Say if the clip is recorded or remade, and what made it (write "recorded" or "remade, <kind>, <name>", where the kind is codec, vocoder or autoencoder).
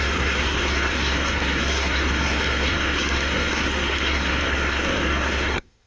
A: remade, codec, SNAC